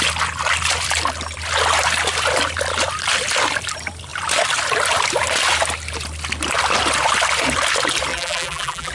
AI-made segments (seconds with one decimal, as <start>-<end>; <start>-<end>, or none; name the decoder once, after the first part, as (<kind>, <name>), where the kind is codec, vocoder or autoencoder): 8.1-8.9 (vocoder, BigVGAN v2)